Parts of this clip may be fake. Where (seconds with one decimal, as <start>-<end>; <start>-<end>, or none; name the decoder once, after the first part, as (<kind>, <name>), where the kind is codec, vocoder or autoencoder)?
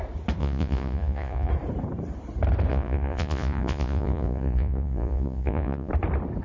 0.4-1.5 (vocoder, Vocos); 2.7-5.9